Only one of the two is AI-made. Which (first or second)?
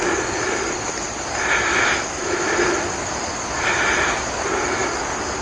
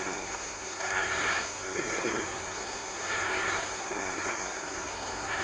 second